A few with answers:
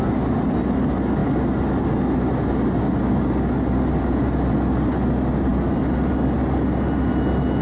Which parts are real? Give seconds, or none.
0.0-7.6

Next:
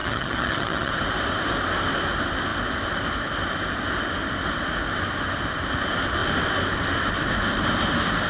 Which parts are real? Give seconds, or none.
0.9-8.3

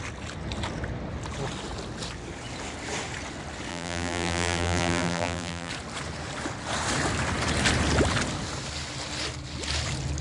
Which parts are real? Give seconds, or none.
0.0-3.7; 5.7-10.2

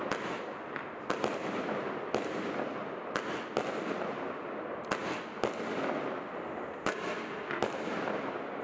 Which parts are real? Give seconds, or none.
0.0-8.6

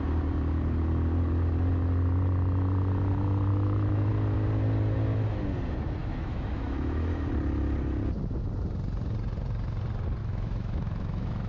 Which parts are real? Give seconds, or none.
0.0-3.5; 4.1-6.0; 7.3-10.2

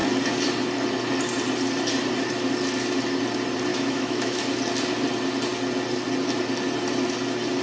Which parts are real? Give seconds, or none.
0.0-3.7; 4.4-7.6